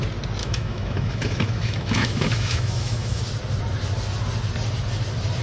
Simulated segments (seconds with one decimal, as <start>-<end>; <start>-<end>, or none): 0.4-3.2